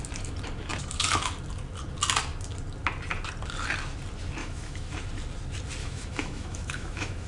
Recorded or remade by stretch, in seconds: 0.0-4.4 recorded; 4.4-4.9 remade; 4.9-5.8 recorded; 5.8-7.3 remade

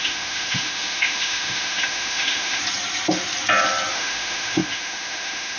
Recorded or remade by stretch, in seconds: 0.0-2.6 remade; 2.6-3.9 recorded; 3.9-5.6 remade

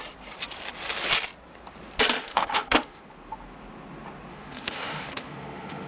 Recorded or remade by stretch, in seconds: 0.0-2.2 recorded; 2.2-3.0 remade; 3.0-4.3 recorded; 4.3-5.9 remade

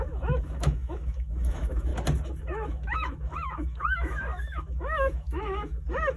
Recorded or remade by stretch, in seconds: 0.0-1.9 remade; 1.9-2.4 recorded; 2.4-6.2 remade

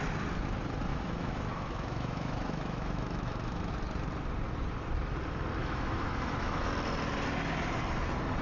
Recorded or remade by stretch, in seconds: 0.0-0.9 recorded; 0.9-3.7 remade; 3.7-5.6 recorded; 5.6-6.7 remade; 6.7-8.4 recorded

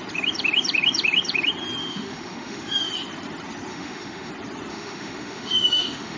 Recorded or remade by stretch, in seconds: 0.0-1.8 recorded; 1.8-2.9 remade; 2.9-3.7 recorded; 3.7-4.3 remade; 4.3-4.7 recorded; 4.7-6.2 remade